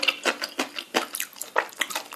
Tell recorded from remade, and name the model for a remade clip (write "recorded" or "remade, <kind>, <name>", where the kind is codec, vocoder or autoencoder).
recorded